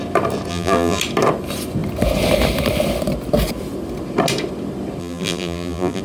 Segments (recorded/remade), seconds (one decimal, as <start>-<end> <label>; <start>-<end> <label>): 0.0-0.5 recorded; 0.5-1.0 remade; 1.0-5.0 recorded; 5.0-6.0 remade